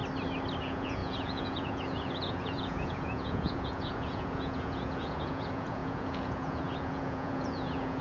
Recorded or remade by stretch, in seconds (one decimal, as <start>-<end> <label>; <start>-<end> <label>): 0.0-0.6 recorded; 0.6-8.0 remade